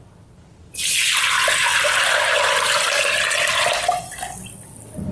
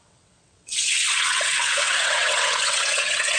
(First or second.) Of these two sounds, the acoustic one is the first